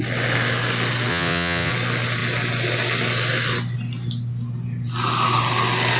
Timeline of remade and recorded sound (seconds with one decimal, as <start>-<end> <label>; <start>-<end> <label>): 0.0-1.1 recorded; 1.1-1.7 remade; 1.7-6.0 recorded